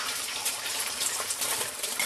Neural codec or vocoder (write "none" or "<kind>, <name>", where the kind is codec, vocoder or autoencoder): vocoder, BigVGAN v2